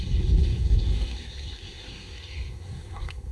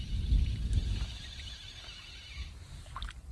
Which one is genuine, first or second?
second